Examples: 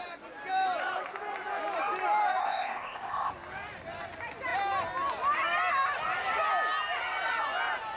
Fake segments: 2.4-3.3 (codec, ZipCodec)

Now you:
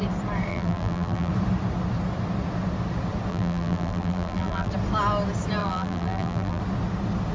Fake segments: 0.5-1.3 (vocoder, BigVGAN v2); 3.3-4.7; 5.6-6.6

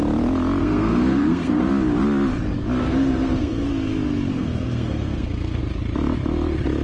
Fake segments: 0.6-1.7 (codec, SNAC); 2.8-3.7; 4.3-5.6

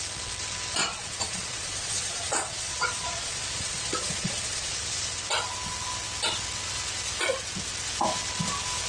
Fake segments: 0.8-4.7 (vocoder, Vocos)

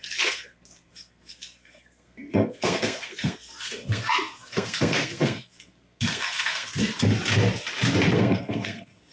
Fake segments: 0.0-6.8 (codec, SNAC); 8.1-9.1

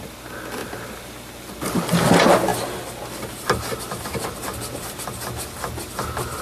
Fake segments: none